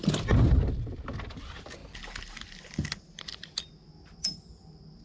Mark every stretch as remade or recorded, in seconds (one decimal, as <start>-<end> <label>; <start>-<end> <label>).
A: 0.0-5.0 recorded